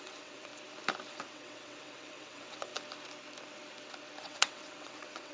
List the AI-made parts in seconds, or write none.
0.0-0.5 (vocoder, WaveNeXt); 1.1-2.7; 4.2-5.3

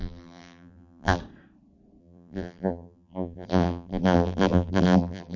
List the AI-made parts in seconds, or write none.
0.0-1.2 (vocoder, BigVGAN v2); 2.0-5.4

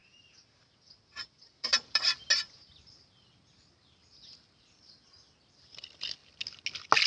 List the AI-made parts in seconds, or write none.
1.4-2.2 (vocoder, BigVGAN v2); 4.6-6.2